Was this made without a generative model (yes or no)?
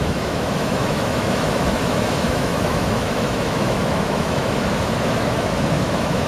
no